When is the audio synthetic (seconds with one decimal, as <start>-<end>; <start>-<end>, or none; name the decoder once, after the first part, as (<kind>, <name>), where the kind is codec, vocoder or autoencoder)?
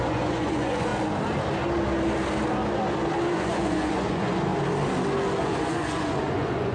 0.0-0.9 (vocoder, Vocos); 3.3-4.5; 5.4-6.7